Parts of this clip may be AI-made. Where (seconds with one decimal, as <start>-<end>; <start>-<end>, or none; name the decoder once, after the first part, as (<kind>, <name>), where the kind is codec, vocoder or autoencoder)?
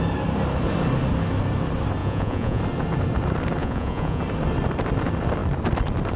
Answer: 2.0-2.6 (vocoder, Vocos); 3.6-4.2